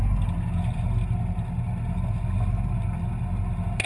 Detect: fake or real real